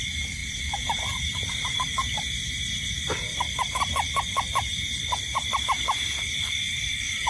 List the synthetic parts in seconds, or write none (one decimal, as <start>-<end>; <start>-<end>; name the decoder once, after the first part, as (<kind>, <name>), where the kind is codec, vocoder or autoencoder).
0.0-7.3 (vocoder, BigVGAN v2)